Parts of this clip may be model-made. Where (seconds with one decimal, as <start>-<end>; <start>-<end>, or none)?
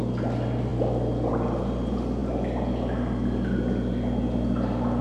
none